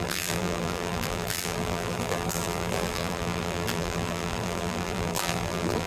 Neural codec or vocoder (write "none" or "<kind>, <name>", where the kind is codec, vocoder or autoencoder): vocoder, BigVGAN v2